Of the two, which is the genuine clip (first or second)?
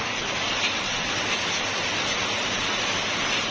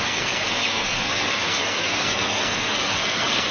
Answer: first